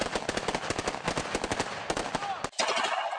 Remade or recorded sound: recorded